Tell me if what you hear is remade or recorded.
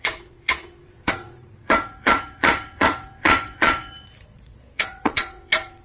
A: remade